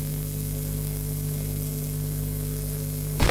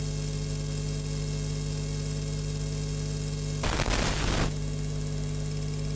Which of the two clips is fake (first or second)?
first